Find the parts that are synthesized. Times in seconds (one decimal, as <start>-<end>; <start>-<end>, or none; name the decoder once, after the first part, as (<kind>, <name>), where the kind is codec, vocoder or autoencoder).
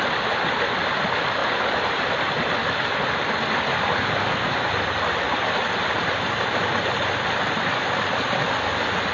none